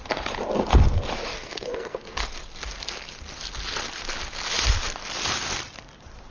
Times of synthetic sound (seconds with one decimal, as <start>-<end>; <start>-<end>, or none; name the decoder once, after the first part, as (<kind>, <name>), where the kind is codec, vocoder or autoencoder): 1.3-2.2 (codec, SNAC)